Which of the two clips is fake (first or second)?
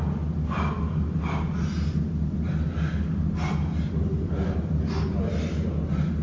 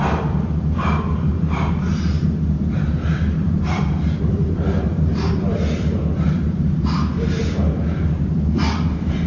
second